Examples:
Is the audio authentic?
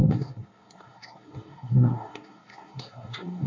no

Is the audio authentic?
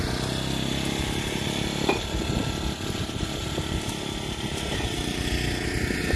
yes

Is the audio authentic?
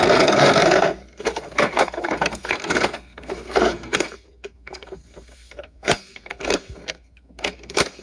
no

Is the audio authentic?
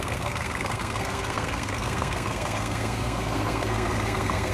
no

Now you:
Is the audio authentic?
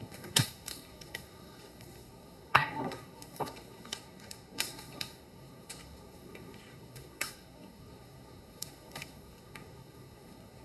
no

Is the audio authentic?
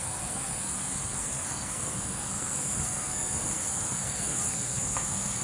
no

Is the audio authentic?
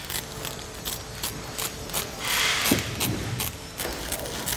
yes